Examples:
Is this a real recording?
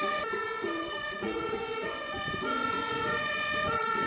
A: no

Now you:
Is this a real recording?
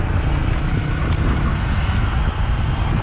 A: yes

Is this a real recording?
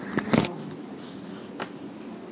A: yes